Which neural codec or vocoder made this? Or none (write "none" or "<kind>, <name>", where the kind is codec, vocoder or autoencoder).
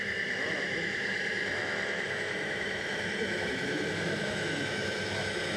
autoencoder, DAC-VAE